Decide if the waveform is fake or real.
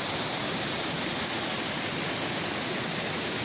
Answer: real